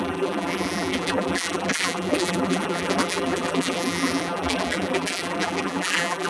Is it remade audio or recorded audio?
remade